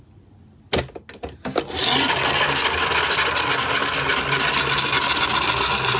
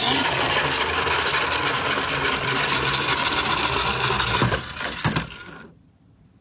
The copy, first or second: second